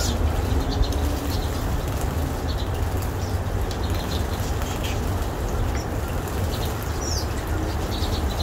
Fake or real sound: real